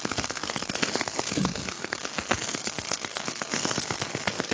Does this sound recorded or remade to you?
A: remade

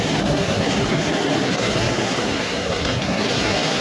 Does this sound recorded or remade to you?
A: remade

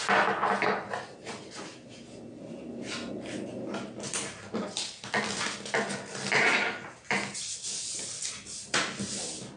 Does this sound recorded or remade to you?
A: recorded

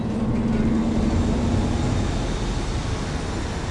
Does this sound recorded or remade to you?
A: recorded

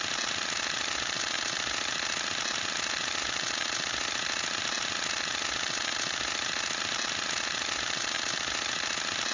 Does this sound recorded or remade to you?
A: recorded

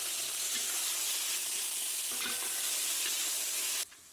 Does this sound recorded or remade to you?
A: recorded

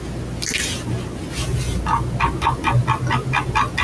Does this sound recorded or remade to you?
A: recorded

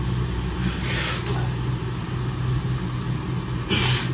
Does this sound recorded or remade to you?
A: recorded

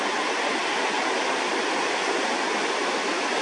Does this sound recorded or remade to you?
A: recorded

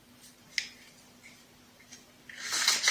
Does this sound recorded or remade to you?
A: recorded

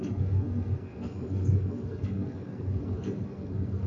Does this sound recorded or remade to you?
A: remade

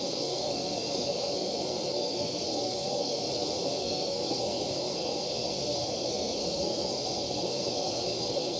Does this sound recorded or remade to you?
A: remade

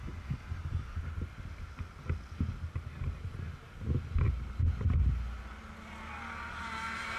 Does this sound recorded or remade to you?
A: recorded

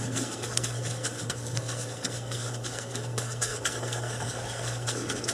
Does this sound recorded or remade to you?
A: remade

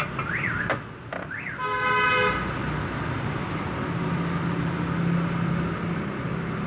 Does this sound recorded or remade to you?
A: recorded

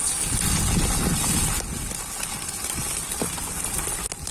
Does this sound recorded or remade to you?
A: recorded